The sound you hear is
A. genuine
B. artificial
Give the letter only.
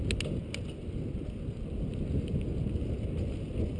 A